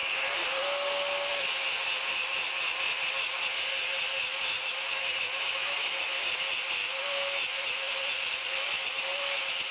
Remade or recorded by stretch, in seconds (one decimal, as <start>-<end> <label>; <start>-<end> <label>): 0.0-4.5 recorded; 4.5-6.0 remade; 6.0-9.7 recorded